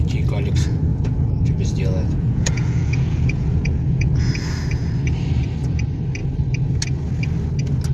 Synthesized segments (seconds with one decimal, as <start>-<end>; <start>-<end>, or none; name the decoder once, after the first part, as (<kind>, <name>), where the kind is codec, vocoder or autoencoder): 0.9-4.2 (vocoder, Vocos)